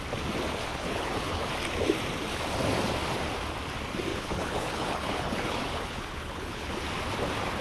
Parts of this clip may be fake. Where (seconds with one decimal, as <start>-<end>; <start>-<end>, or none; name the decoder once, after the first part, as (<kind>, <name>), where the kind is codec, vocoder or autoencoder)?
0.7-1.4 (codec, HILCodec); 4.1-6.7